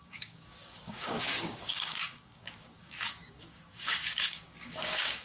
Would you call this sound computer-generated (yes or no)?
yes